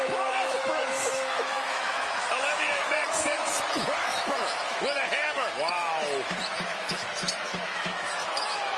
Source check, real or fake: fake